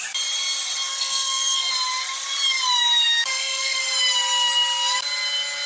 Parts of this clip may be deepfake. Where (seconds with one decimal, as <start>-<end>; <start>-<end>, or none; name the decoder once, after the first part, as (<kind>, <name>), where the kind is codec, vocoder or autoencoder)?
0.9-1.7 (codec, SNAC); 3.3-3.8